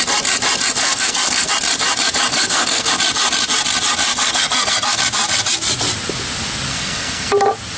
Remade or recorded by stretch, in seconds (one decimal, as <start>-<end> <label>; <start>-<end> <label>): 0.0-0.8 recorded; 0.8-1.5 remade; 1.5-2.3 recorded; 2.3-2.9 remade; 2.9-4.1 recorded; 4.1-5.0 remade; 5.0-6.7 recorded; 6.7-7.3 remade; 7.3-7.8 recorded